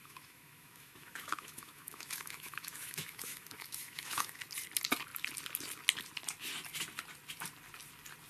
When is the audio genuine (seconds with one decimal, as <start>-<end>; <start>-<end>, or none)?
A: 4.4-8.3

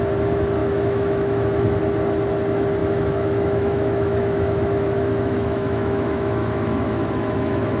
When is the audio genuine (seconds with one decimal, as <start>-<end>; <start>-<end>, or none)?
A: 0.0-0.6; 1.8-2.8

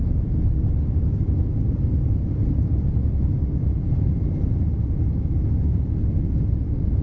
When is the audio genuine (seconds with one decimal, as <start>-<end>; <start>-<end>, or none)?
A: 0.0-7.0